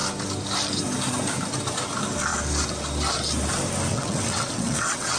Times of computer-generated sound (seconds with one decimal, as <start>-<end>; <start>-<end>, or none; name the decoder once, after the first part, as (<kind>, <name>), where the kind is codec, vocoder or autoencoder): 3.9-5.2 (vocoder, WaveNeXt)